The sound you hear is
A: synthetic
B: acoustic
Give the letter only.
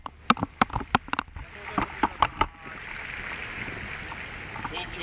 B